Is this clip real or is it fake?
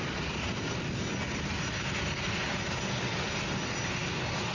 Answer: real